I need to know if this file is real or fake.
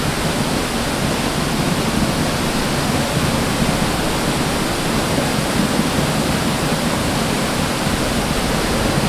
real